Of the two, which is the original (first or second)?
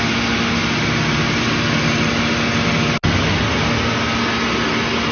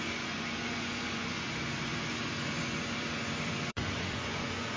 first